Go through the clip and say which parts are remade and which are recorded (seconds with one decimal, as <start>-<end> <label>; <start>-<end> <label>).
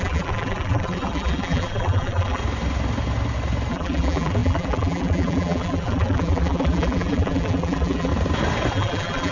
0.0-2.4 remade; 2.4-3.7 recorded; 3.7-8.1 remade; 8.1-8.7 recorded; 8.7-9.3 remade